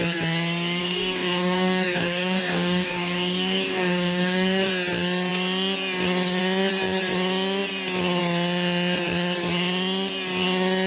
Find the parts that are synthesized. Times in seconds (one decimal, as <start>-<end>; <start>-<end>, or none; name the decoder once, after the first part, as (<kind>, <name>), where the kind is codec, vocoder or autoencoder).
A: 0.8-4.7 (codec, DAC)

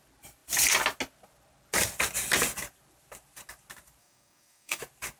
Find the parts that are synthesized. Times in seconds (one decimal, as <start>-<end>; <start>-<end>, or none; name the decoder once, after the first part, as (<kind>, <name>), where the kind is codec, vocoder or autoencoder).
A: 4.0-4.8 (codec, DAC)